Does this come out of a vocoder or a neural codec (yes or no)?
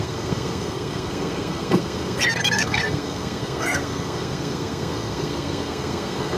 yes